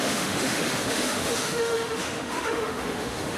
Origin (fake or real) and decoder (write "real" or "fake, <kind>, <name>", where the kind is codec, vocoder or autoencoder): fake, autoencoder, DAC-VAE